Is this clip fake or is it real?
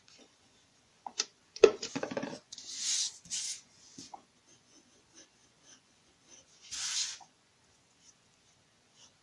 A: fake